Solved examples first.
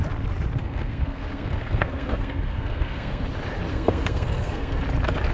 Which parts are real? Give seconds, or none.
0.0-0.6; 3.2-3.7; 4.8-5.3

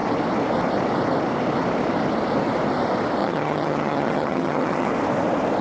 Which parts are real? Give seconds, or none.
0.0-3.2; 4.9-5.6

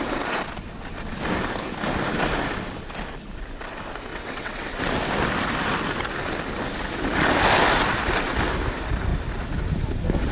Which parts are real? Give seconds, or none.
0.0-4.1; 4.8-10.3

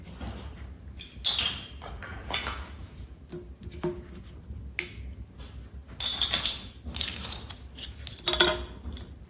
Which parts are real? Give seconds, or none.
0.0-2.1; 3.2-9.3